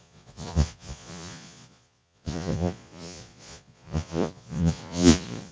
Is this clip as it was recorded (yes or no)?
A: no